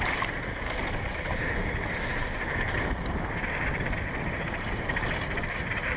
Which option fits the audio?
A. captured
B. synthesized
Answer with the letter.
B